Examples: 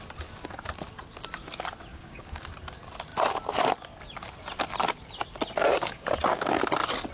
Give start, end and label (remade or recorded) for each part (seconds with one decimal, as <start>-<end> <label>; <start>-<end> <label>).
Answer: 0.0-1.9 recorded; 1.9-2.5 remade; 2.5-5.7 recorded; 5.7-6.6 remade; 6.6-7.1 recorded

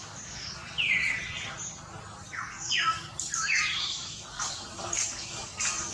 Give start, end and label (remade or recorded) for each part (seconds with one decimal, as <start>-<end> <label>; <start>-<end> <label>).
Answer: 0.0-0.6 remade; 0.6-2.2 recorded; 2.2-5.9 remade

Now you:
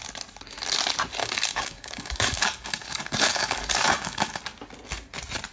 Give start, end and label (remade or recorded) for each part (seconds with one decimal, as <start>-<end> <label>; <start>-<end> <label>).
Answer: 0.0-1.2 recorded; 1.2-4.4 remade; 4.4-5.5 recorded

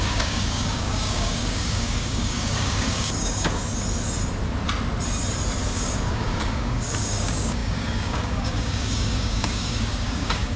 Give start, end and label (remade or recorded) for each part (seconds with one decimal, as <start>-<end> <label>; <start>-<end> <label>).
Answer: 0.0-3.6 remade; 3.6-5.7 recorded; 5.7-10.6 remade

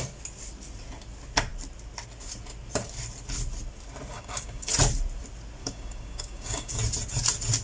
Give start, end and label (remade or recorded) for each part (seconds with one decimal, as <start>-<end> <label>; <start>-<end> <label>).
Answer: 0.0-4.1 recorded; 4.1-4.7 remade; 4.7-5.6 recorded; 5.6-6.8 remade; 6.8-7.6 recorded

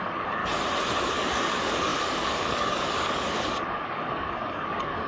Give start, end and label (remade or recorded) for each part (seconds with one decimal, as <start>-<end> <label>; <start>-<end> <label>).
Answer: 0.0-0.4 remade; 0.4-1.0 recorded; 1.0-5.1 remade

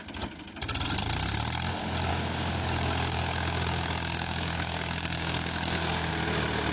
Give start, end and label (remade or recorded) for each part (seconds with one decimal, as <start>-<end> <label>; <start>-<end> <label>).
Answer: 0.0-2.1 recorded; 2.1-6.1 remade; 6.1-6.7 recorded